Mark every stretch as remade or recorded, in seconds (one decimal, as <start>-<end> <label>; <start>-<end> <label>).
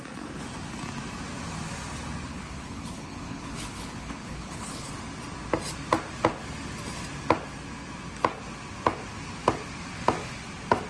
0.0-2.3 recorded; 2.3-4.9 remade; 4.9-10.9 recorded